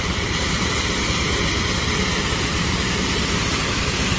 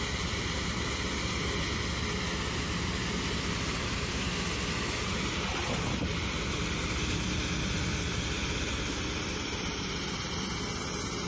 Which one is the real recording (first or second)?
second